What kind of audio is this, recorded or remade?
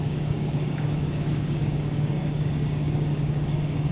remade